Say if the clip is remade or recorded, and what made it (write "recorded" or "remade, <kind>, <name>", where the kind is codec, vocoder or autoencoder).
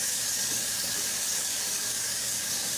remade, codec, DAC